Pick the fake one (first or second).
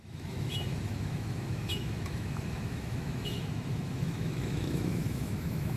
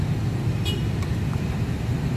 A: first